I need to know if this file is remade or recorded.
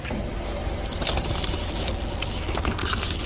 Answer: recorded